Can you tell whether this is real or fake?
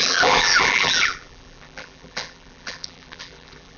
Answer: fake